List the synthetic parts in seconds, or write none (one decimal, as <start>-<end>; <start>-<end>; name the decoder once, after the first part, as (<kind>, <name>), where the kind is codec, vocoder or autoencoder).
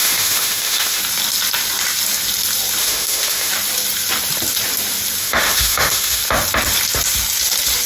0.0-1.0 (autoencoder, DAC-VAE); 2.8-3.5; 5.2-6.2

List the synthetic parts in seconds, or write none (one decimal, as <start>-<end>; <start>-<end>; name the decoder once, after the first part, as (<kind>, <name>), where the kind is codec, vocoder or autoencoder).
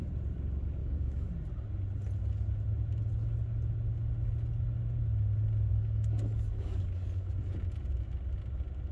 0.8-1.3 (codec, DAC); 5.7-7.3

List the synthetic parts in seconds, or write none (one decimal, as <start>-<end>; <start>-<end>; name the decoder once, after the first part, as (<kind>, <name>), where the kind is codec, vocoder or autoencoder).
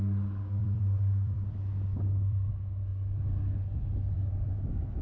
0.6-2.5 (vocoder, BigVGAN v2)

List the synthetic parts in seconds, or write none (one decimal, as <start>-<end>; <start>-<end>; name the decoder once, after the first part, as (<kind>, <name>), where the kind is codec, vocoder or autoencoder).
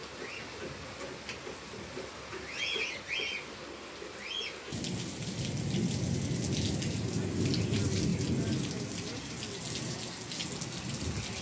none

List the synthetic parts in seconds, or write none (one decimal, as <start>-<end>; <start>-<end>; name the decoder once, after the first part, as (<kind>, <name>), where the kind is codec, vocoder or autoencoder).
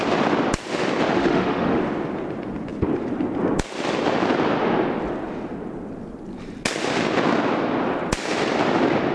1.2-1.8 (autoencoder, DAC-VAE)